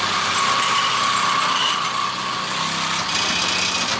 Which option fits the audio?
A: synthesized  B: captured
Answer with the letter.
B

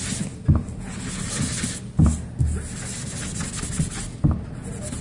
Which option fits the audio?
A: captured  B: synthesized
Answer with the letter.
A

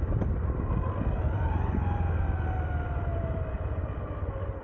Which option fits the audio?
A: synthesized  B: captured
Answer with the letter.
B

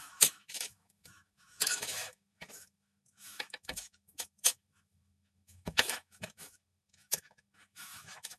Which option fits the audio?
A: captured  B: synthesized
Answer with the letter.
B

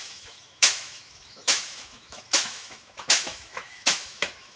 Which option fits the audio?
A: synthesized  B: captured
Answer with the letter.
A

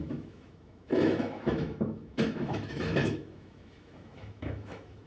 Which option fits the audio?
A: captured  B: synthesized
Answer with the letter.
B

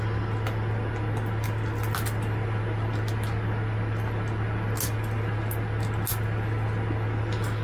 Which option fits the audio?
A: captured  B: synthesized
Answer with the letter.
A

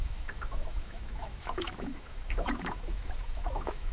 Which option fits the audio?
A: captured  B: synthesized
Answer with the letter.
B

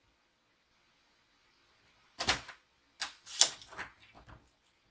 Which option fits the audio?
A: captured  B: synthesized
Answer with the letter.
A